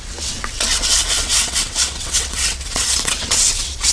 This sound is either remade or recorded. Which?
remade